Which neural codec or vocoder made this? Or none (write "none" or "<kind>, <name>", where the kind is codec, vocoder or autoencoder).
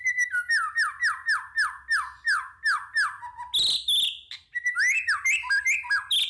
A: none